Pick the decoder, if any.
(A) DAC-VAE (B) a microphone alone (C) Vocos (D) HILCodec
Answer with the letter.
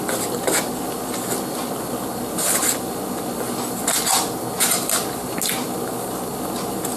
B